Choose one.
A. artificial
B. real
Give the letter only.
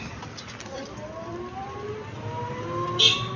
B